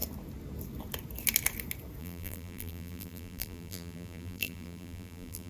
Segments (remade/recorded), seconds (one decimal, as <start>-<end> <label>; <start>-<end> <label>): 0.0-2.0 recorded; 2.0-5.5 remade